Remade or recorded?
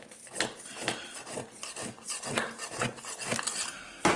recorded